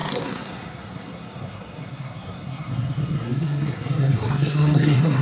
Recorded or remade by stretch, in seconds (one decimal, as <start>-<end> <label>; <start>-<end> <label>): 0.0-5.2 remade